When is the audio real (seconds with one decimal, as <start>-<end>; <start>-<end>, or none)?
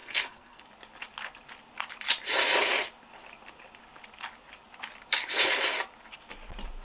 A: 0.6-6.8